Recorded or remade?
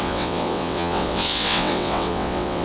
remade